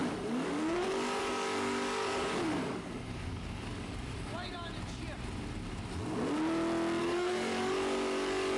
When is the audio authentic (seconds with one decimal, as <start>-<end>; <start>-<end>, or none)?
4.3-7.0

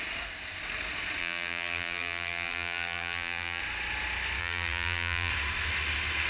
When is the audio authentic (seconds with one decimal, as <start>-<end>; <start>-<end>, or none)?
0.0-1.2; 3.6-4.4; 5.3-6.3

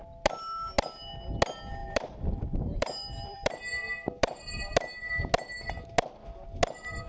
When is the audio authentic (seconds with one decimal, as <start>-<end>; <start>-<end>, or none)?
0.0-1.8; 3.6-7.1

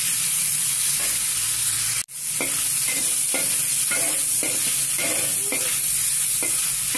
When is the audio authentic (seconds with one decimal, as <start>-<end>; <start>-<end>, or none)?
0.0-7.0

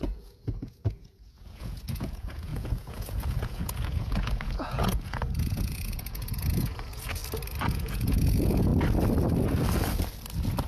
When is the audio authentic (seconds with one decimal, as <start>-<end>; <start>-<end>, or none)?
7.2-7.7; 8.7-10.7

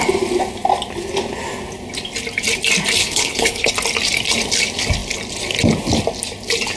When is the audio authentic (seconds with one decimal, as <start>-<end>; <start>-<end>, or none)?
0.0-3.0; 3.7-6.8

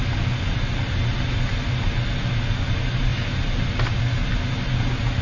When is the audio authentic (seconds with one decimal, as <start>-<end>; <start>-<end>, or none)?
0.0-5.2

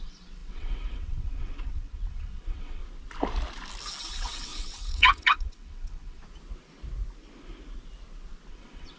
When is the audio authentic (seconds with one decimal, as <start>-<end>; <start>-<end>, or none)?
2.8-4.0; 6.2-8.5